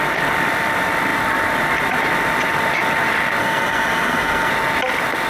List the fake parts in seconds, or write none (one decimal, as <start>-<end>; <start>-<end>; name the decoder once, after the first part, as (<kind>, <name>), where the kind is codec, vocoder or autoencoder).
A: 3.4-4.5 (codec, SNAC)